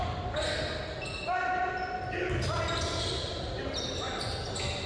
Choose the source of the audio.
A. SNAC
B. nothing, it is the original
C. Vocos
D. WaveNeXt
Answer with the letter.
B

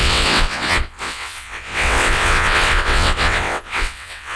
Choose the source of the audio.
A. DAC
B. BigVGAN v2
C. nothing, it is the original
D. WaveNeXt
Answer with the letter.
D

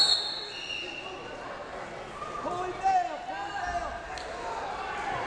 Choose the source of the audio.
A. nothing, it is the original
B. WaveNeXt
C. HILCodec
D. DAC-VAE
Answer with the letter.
A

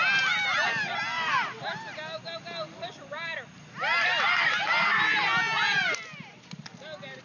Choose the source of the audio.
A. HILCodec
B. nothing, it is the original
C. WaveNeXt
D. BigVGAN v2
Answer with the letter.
B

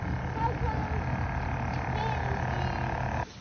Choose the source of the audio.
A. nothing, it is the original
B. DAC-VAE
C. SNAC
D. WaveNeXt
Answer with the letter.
A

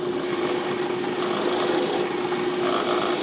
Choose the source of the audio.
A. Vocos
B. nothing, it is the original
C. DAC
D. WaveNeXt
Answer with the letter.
B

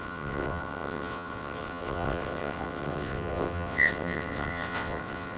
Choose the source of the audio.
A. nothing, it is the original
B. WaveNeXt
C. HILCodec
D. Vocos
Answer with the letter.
B